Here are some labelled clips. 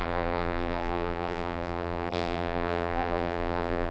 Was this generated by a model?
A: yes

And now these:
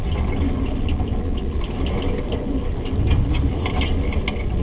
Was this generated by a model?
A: no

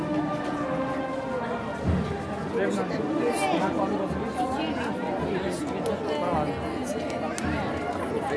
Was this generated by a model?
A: no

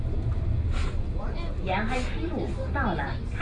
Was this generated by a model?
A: no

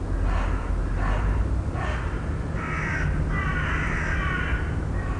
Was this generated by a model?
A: no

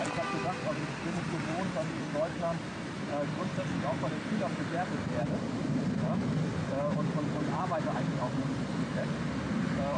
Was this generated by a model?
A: yes